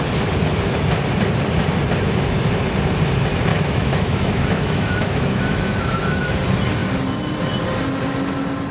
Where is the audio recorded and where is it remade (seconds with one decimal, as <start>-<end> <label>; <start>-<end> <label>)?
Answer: 0.0-3.5 recorded; 3.5-6.3 remade; 6.3-8.7 recorded